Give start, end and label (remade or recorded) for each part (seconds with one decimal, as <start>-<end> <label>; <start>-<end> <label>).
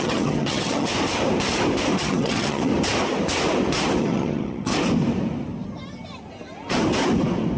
0.0-0.9 remade; 0.9-2.0 recorded; 2.0-2.7 remade; 2.7-4.0 recorded; 4.0-4.7 remade; 4.7-7.6 recorded